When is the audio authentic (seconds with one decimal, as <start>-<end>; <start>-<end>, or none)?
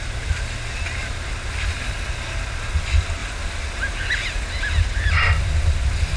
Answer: 0.0-6.2